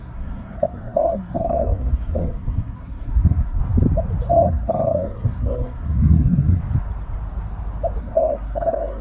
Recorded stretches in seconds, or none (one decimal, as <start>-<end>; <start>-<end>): 3.6-4.3; 6.6-8.0